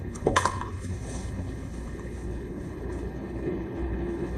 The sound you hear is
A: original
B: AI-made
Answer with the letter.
B